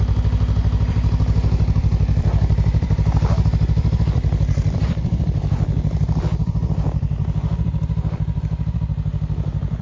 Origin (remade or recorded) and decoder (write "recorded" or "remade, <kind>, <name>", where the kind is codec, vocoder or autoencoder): remade, vocoder, BigVGAN v2